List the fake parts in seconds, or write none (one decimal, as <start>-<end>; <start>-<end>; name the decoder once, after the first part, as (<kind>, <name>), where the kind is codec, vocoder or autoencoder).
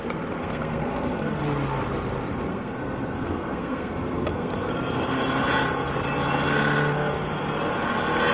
0.4-1.4 (codec, SNAC); 2.5-4.7